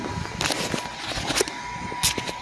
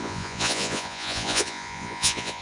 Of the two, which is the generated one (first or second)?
second